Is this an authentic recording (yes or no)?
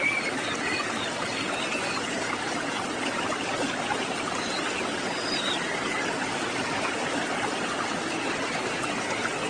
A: yes